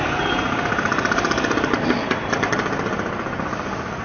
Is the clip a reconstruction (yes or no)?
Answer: no